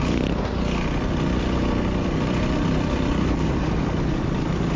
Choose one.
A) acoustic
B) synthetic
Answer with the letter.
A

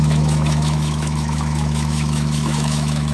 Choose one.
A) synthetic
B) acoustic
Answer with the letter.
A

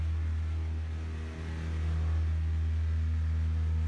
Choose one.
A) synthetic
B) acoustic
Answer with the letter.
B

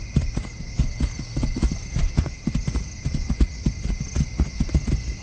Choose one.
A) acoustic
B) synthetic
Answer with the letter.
A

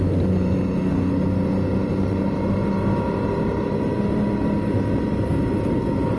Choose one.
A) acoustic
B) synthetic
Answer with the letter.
A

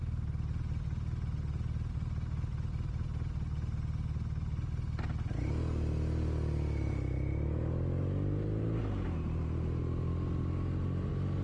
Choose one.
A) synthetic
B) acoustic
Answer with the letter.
B